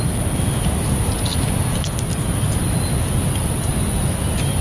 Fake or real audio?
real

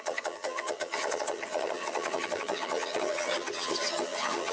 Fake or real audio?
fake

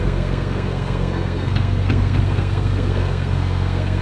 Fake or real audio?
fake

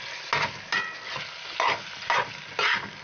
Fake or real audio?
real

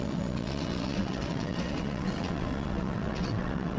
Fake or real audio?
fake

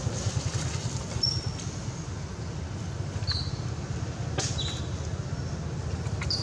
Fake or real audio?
real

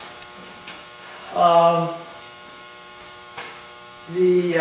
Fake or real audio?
fake